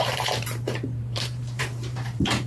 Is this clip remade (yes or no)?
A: yes